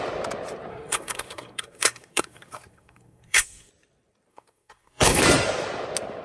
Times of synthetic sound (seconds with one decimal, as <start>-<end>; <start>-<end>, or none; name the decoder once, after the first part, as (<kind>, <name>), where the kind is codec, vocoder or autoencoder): 0.7-3.7 (codec, SNAC); 4.3-5.2